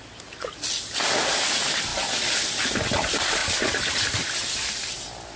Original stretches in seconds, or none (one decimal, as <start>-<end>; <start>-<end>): 0.0-5.4